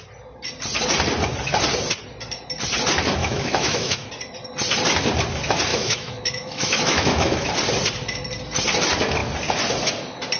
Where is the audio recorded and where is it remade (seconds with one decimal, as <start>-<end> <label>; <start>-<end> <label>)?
0.0-3.2 recorded; 3.2-4.1 remade; 4.1-5.7 recorded; 5.7-7.5 remade; 7.5-10.4 recorded

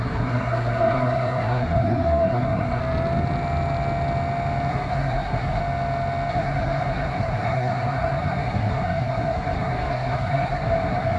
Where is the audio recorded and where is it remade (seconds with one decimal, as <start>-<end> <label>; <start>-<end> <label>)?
0.0-2.8 remade; 2.8-4.7 recorded; 4.7-5.6 remade; 5.6-6.3 recorded; 6.3-11.2 remade

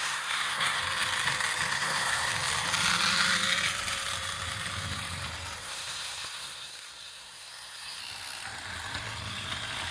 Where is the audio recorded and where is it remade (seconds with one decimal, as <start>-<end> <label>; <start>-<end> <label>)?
0.0-0.8 remade; 0.8-1.7 recorded; 1.7-2.3 remade; 2.3-5.6 recorded; 5.6-8.0 remade; 8.0-9.9 recorded

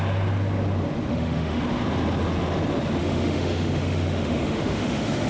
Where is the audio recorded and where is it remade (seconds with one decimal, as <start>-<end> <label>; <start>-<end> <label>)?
0.0-1.1 recorded; 1.1-1.6 remade; 1.6-3.0 recorded; 3.0-5.3 remade

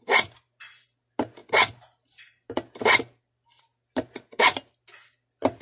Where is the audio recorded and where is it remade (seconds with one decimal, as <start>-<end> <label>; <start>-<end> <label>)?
0.0-5.6 recorded

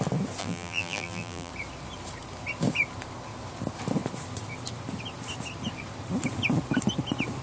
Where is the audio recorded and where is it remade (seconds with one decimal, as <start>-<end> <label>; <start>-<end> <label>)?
0.0-0.4 recorded; 0.4-1.5 remade; 1.5-7.4 recorded